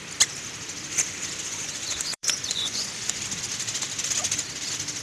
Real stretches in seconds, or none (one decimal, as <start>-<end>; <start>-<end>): 0.0-1.5; 3.2-5.0